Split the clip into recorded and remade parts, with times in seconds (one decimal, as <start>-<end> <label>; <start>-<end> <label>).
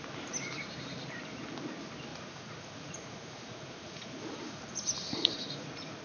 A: 0.0-2.1 recorded; 2.1-6.0 remade